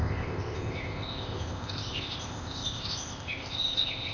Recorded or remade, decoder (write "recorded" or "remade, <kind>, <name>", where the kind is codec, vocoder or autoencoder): remade, codec, ZipCodec